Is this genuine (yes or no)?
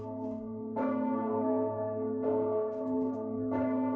no